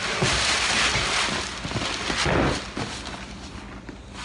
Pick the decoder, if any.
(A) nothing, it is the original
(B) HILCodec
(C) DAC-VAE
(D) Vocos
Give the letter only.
A